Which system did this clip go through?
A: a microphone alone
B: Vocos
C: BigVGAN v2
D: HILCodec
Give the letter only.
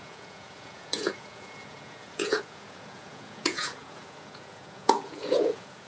B